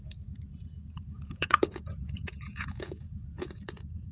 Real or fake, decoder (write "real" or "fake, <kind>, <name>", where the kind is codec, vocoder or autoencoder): fake, vocoder, Vocos